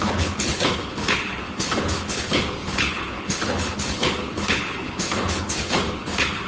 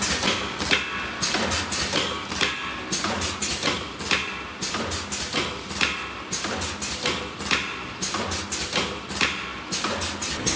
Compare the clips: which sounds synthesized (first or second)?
first